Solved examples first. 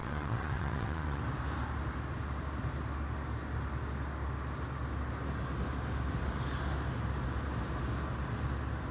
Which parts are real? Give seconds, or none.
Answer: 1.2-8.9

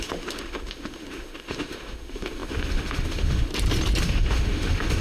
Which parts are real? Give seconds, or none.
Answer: 3.5-4.0